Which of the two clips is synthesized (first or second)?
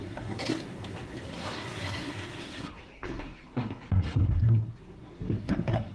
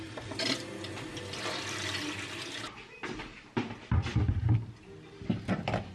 first